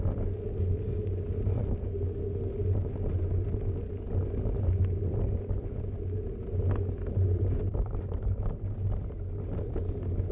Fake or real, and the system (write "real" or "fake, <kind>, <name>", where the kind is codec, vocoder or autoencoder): real